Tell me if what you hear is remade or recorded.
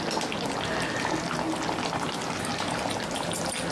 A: recorded